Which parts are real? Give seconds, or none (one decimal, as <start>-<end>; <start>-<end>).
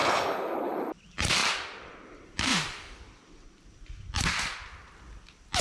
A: 0.9-5.6